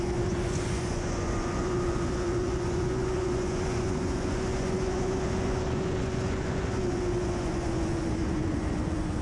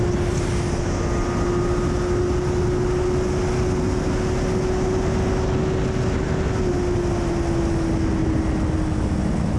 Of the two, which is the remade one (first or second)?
first